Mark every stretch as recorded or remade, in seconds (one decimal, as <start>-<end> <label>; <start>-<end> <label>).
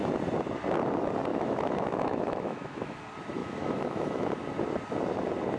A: 0.0-1.3 recorded; 1.3-3.0 remade; 3.0-3.4 recorded; 3.4-4.3 remade; 4.3-5.6 recorded